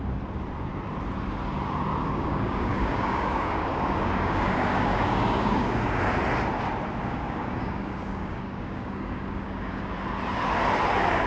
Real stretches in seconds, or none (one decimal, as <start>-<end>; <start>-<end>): 0.0-2.0; 6.0-7.0; 9.9-11.3